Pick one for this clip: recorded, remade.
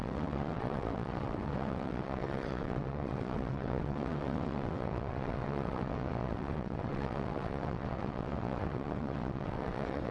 remade